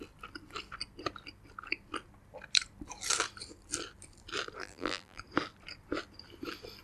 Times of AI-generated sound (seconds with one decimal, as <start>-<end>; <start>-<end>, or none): 4.6-5.2